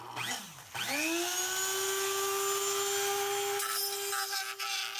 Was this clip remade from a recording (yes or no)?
no